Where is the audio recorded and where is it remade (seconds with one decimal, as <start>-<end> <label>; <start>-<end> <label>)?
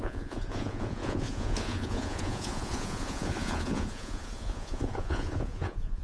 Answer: 0.0-6.0 remade